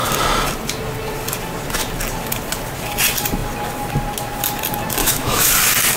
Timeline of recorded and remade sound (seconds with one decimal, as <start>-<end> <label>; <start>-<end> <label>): 0.0-5.0 recorded; 5.0-5.5 remade; 5.5-6.0 recorded